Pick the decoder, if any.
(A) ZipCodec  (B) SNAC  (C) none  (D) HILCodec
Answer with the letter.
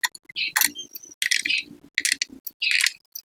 C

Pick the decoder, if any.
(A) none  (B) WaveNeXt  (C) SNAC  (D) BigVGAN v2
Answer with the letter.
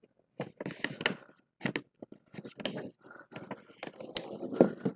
A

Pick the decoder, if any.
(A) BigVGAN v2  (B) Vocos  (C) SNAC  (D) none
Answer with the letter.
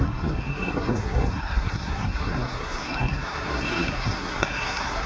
C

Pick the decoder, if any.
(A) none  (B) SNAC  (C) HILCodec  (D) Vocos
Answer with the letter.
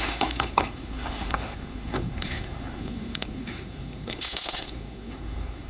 B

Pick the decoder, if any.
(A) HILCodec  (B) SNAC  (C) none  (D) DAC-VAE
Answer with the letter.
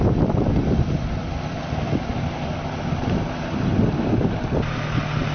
C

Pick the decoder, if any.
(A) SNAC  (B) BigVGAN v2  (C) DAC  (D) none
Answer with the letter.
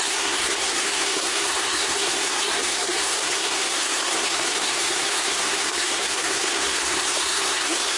A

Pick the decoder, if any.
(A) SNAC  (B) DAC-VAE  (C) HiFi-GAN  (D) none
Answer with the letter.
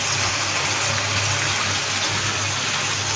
D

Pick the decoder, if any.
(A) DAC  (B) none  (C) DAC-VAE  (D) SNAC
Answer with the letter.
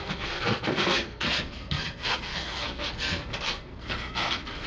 D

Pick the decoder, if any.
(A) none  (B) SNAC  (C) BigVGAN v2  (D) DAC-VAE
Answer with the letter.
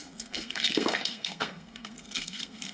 B